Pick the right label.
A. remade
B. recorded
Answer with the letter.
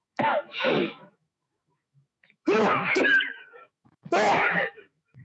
A